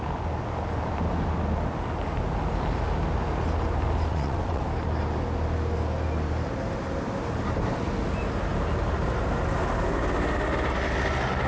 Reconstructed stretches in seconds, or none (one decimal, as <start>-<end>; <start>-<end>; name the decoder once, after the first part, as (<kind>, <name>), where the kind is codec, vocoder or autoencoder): 4.1-4.6 (vocoder, WaveNeXt)